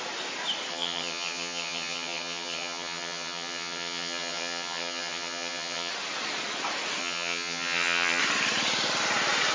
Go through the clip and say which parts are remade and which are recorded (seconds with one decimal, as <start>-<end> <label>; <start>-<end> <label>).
0.0-0.7 recorded; 0.7-5.9 remade; 5.9-7.0 recorded; 7.0-8.2 remade; 8.2-9.5 recorded